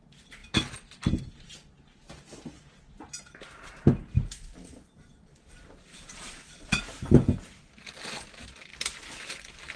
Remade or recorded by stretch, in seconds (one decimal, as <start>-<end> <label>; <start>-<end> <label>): 0.0-5.9 recorded; 5.9-6.8 remade; 6.8-9.8 recorded